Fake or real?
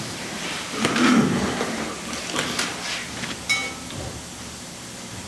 real